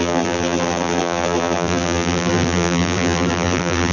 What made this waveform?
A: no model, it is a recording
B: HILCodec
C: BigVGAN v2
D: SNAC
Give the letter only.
C